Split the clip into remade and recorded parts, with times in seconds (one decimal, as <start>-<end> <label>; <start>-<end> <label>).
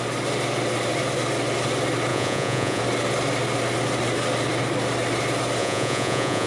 0.0-2.1 recorded; 2.1-2.8 remade; 2.8-5.6 recorded; 5.6-6.5 remade